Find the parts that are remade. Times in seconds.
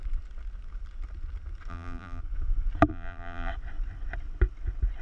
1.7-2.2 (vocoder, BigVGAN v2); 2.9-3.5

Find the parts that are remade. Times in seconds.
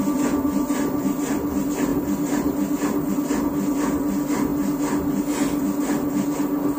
none